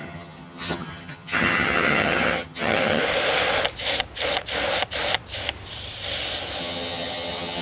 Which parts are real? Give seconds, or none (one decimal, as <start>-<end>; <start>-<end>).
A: 3.0-6.6